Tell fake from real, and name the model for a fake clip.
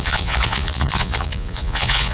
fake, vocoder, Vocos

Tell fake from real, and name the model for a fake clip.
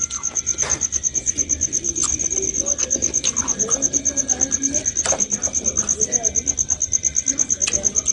real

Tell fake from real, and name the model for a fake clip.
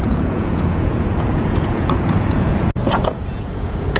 fake, vocoder, Vocos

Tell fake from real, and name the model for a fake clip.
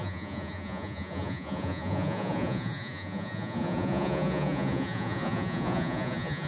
fake, vocoder, Vocos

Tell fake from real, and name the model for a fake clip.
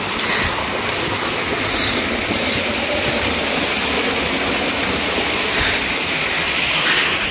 real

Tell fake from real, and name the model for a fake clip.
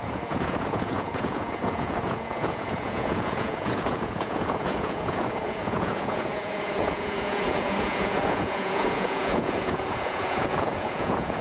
fake, vocoder, Vocos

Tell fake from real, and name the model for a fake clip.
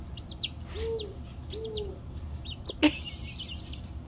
real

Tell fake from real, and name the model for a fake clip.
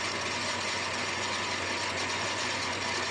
fake, vocoder, Vocos